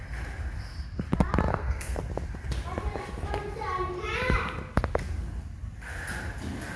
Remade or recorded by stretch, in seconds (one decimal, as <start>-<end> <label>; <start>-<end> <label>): 0.0-1.5 recorded; 1.5-2.0 remade; 2.0-6.8 recorded